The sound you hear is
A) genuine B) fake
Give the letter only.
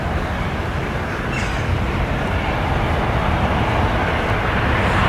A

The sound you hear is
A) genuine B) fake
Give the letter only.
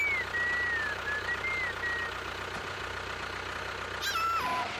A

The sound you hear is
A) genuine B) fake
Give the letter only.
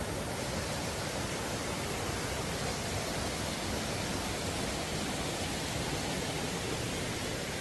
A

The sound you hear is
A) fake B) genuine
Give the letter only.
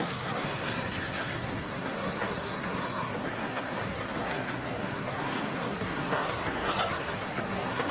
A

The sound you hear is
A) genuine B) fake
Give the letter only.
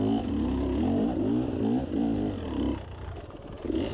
A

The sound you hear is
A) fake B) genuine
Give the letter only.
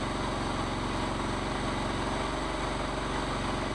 B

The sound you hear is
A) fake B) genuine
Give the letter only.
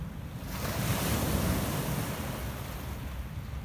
B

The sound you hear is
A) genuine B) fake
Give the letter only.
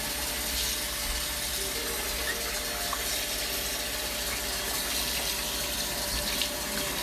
A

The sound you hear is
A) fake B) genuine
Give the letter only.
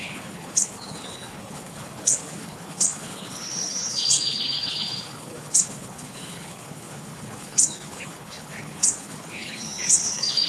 A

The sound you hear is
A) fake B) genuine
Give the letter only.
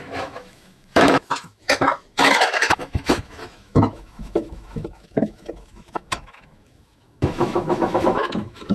A